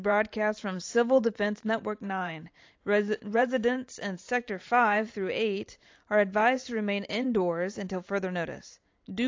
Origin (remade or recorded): remade